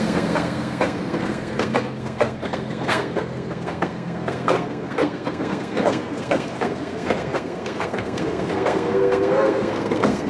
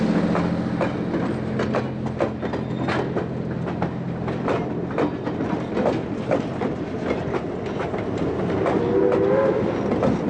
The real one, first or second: second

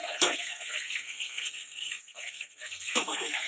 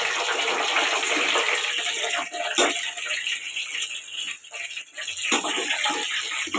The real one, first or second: second